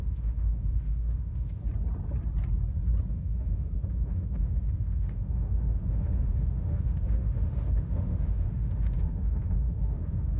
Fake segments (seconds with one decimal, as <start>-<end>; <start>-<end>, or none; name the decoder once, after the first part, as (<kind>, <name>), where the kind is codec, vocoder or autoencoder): 0.0-1.6 (autoencoder, DAC-VAE); 3.1-10.4